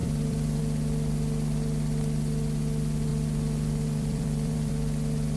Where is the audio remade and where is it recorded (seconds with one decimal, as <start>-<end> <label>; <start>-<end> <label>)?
0.0-0.6 remade; 0.6-3.1 recorded; 3.1-4.7 remade; 4.7-5.4 recorded